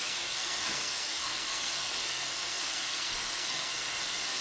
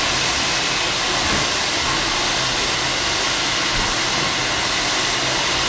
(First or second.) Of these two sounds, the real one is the second